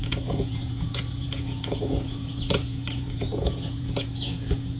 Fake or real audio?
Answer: fake